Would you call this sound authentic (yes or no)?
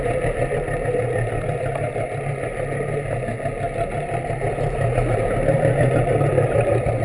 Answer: yes